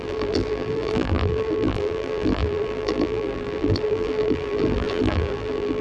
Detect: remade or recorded remade